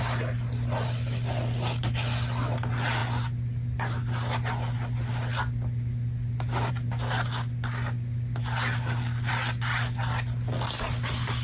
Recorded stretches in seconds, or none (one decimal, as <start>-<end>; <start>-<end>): 0.0-11.4